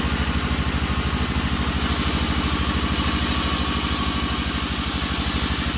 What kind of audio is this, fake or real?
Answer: real